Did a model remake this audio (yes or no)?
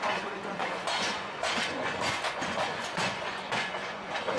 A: yes